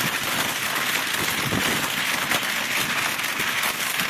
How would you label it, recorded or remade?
recorded